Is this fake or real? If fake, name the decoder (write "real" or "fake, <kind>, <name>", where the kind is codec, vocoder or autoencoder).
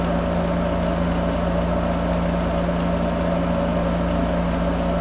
real